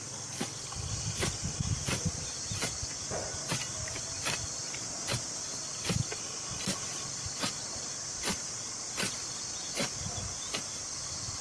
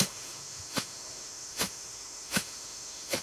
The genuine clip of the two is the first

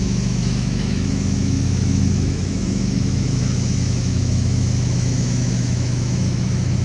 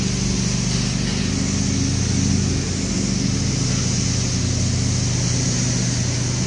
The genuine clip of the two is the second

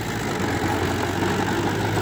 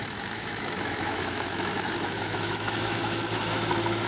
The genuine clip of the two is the first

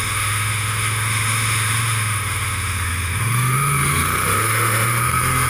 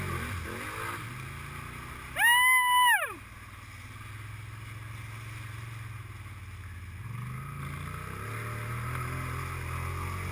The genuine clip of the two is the second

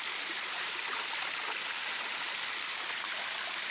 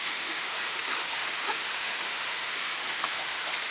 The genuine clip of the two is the first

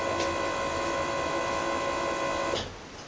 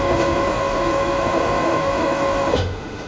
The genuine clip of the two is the first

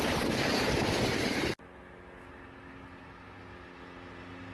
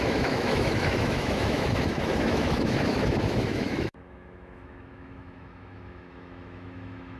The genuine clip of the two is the first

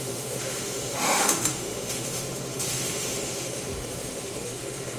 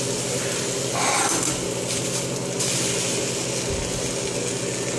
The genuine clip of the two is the second